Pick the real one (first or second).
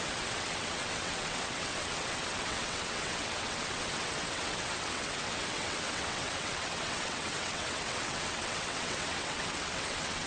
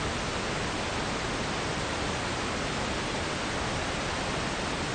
second